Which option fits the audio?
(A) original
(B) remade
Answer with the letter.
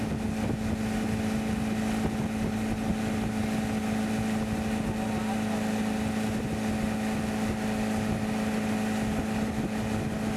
A